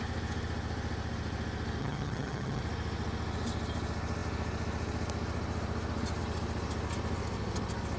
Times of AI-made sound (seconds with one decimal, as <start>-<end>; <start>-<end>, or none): 1.8-2.6